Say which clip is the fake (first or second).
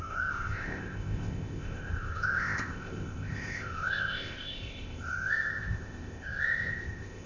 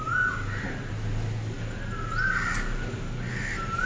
first